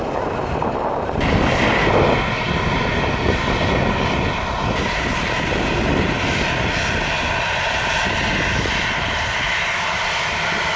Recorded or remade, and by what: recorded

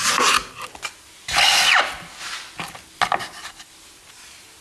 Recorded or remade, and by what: recorded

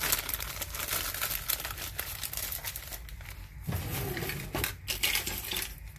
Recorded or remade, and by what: recorded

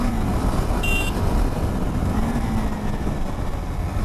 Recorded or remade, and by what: recorded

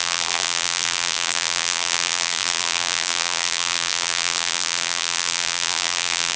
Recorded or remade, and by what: remade, vocoder, BigVGAN v2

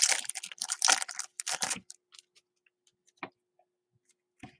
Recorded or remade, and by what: recorded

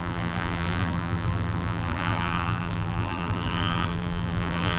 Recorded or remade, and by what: remade, vocoder, BigVGAN v2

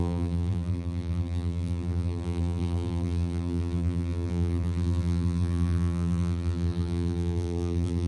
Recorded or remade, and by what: remade, vocoder, BigVGAN v2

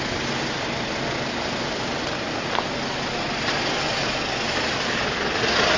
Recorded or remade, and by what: recorded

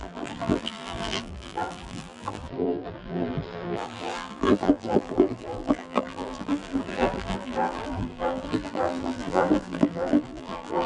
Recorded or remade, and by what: remade, vocoder, BigVGAN v2